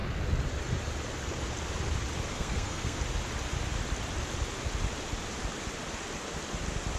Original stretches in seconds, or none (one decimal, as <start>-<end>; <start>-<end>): 0.0-2.3; 3.0-7.0